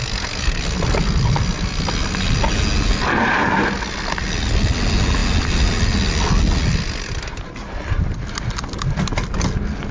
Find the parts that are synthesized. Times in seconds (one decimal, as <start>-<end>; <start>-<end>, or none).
none